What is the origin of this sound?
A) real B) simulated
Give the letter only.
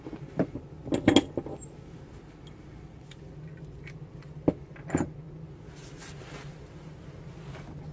A